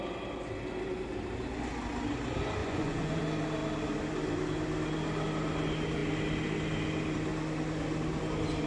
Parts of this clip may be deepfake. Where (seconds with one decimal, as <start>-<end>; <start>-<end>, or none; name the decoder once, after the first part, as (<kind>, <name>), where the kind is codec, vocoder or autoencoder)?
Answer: 2.6-3.2 (vocoder, Vocos)